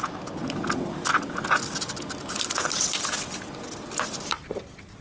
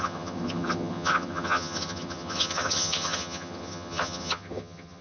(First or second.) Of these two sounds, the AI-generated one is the second